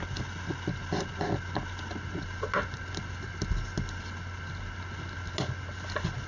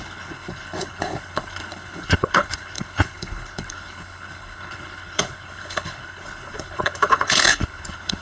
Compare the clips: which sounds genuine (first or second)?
first